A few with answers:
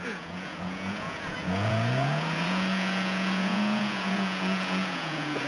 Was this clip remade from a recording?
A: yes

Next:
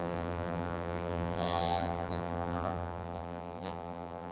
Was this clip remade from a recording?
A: yes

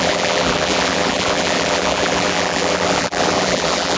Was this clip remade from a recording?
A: yes